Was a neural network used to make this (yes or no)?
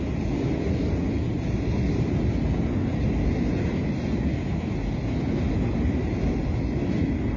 no